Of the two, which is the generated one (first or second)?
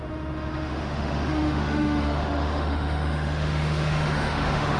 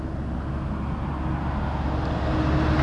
first